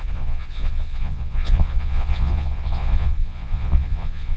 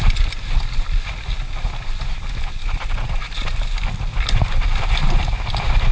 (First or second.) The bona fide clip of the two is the second